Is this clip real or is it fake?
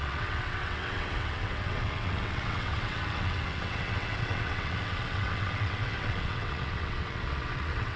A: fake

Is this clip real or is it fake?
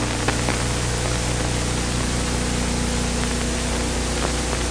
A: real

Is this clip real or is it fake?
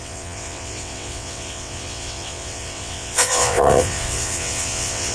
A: fake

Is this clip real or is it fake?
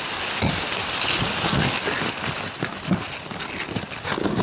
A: real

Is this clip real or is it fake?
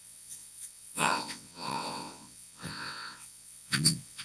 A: fake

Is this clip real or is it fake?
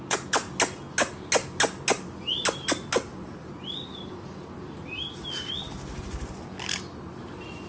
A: real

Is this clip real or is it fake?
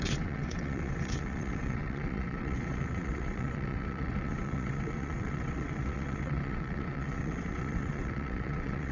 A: fake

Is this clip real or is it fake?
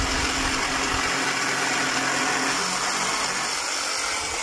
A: real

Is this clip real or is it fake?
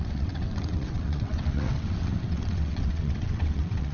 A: fake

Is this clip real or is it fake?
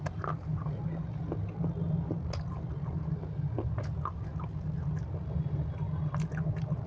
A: real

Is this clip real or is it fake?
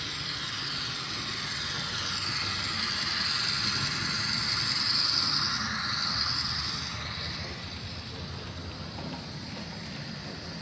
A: real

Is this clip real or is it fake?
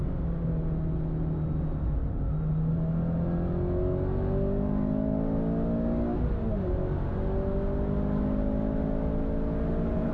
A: real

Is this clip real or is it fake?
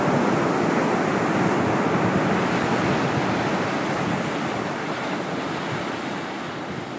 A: real